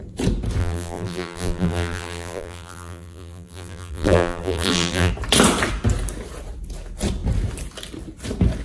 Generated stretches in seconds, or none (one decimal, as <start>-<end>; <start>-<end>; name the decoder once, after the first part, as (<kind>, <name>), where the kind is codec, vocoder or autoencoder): 0.6-5.1 (vocoder, BigVGAN v2)